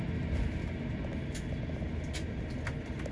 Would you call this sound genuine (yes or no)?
yes